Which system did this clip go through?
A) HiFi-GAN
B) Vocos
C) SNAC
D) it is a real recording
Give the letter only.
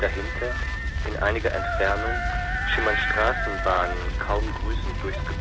D